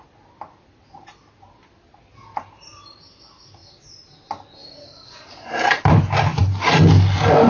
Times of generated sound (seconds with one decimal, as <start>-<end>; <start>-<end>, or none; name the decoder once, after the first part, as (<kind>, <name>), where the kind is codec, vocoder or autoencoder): none